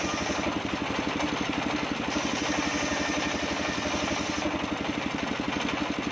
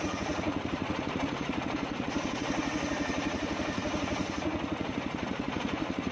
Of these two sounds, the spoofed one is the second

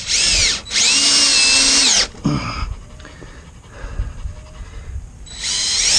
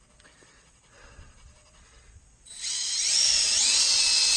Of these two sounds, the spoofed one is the second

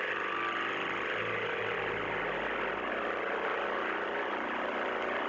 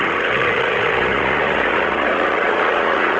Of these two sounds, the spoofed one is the second